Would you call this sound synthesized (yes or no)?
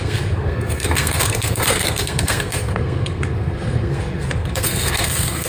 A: yes